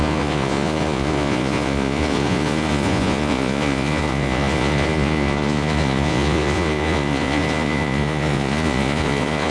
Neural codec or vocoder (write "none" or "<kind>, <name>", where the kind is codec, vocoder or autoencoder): vocoder, Vocos